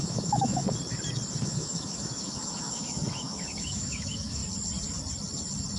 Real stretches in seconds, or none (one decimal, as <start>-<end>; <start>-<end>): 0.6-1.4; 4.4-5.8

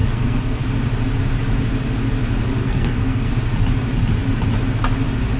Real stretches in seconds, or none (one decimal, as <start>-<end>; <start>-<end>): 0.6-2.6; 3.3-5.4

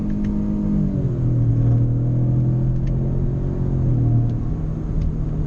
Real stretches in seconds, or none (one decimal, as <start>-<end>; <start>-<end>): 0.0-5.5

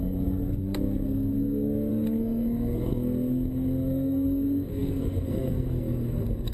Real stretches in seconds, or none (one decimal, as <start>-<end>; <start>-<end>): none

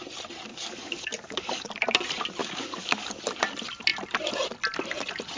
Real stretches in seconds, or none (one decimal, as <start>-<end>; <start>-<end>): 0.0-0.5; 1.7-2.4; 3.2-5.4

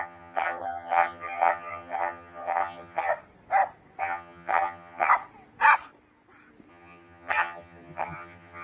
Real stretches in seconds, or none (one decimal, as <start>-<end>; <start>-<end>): 3.1-4.0; 5.1-6.7

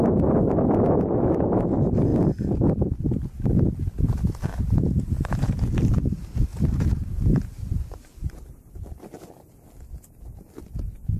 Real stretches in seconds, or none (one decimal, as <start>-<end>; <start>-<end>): 0.0-4.5; 5.5-6.5; 8.6-11.2